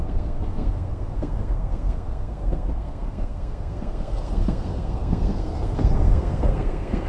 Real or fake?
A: fake